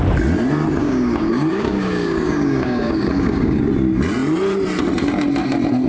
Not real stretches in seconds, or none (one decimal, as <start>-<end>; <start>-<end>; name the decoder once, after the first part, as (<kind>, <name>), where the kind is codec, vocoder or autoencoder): 0.8-3.6 (codec, DAC)

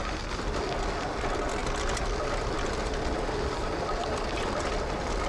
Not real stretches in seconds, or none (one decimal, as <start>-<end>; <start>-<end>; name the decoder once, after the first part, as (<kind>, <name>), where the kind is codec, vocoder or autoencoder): none

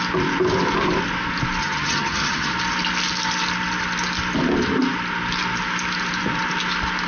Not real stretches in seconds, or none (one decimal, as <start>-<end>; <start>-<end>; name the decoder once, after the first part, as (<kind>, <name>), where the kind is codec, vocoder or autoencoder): 1.6-2.5 (vocoder, HiFi-GAN)

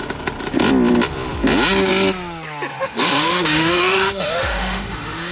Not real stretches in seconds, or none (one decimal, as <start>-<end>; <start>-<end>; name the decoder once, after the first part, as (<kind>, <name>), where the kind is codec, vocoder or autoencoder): 2.7-5.3 (autoencoder, DAC-VAE)

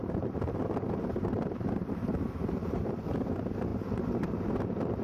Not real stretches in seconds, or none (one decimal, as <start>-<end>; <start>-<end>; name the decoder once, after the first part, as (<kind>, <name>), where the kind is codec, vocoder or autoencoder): 0.0-3.0 (vocoder, BigVGAN v2)